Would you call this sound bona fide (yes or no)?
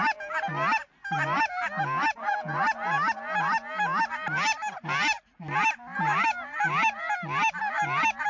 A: yes